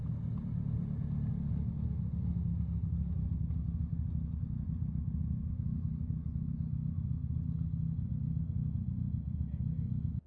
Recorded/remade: recorded